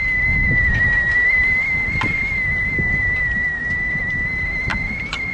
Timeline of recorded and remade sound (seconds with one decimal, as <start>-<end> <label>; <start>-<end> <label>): 0.0-4.7 recorded; 4.7-5.3 remade